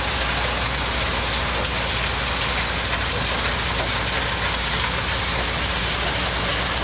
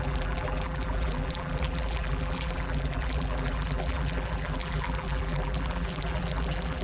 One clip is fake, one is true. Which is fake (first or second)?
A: second